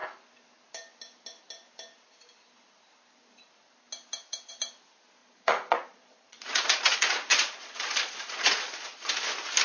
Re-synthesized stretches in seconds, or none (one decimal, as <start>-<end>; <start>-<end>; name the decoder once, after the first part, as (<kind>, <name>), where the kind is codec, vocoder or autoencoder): 5.2-9.1 (vocoder, Vocos)